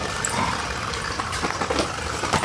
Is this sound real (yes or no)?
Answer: yes